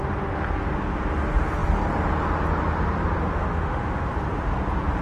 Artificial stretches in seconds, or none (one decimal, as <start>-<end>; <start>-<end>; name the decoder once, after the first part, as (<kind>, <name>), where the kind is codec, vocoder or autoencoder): 3.2-4.1 (autoencoder, DAC-VAE)